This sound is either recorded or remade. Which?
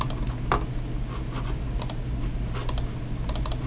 recorded